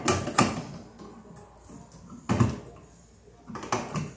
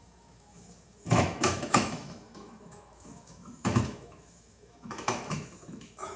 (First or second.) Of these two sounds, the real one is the first